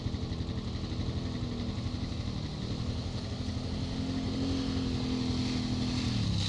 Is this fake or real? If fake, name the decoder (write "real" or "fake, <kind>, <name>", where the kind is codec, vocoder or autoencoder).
real